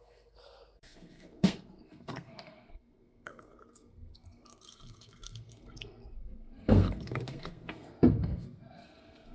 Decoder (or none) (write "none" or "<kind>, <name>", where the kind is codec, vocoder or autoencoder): codec, SNAC